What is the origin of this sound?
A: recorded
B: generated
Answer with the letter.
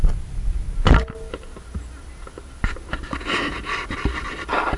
A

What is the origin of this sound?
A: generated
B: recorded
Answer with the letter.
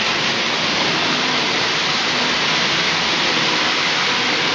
B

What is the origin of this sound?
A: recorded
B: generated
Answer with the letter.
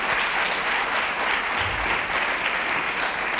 A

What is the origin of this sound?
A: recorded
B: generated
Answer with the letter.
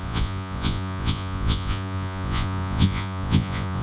B